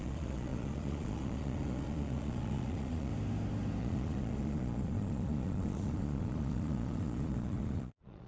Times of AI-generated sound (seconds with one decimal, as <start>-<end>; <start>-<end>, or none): 0.0-3.1; 3.8-8.3